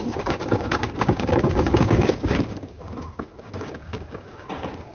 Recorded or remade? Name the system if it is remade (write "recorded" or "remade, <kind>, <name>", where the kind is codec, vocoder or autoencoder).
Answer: remade, codec, DAC